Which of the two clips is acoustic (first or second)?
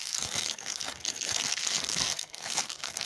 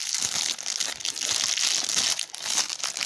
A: second